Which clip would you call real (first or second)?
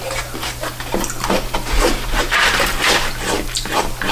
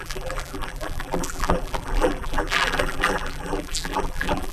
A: first